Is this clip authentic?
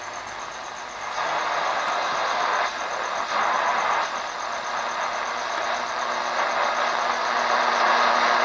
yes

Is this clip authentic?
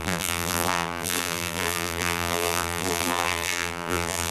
no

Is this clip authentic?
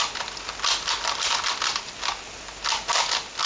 yes